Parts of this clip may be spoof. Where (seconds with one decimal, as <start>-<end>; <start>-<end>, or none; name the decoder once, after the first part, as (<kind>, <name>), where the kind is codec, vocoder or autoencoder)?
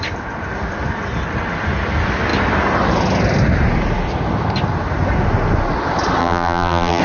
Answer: 6.2-7.0 (vocoder, BigVGAN v2)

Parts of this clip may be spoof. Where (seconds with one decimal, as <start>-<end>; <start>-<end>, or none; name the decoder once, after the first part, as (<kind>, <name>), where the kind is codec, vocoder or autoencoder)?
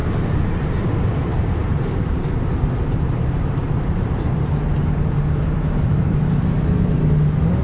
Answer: 1.6-6.2 (vocoder, BigVGAN v2)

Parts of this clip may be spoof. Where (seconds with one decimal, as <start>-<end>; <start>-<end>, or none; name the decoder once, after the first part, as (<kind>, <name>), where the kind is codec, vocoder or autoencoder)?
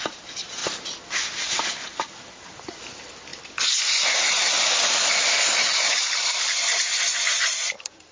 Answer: 0.0-0.6 (vocoder, BigVGAN v2); 1.9-3.3; 6.5-8.1